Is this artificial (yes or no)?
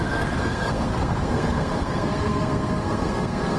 yes